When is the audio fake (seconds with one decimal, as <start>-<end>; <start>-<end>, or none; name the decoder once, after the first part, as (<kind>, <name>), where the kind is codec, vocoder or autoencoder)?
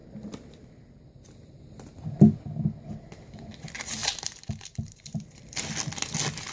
4.0-5.4 (vocoder, BigVGAN v2)